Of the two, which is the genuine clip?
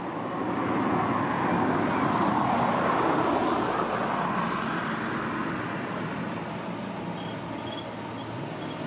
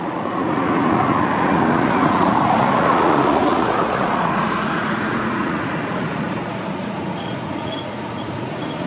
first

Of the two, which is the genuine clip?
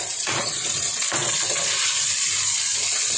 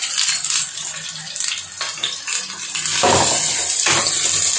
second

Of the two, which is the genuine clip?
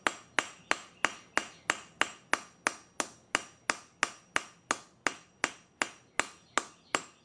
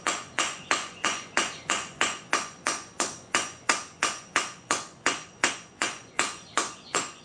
first